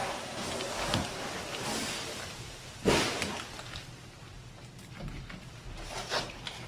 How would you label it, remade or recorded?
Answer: recorded